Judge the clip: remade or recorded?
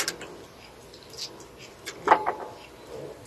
recorded